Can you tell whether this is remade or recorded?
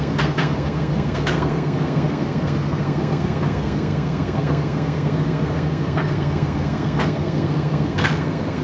remade